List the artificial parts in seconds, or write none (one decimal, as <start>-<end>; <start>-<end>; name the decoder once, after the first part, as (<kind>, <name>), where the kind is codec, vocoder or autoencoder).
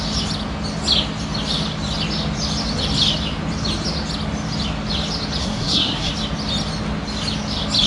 5.4-6.1 (codec, SNAC)